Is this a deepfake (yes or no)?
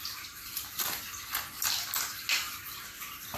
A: no